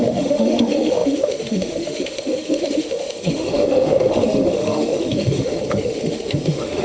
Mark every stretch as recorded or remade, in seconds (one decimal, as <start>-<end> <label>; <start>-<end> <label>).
0.0-6.8 remade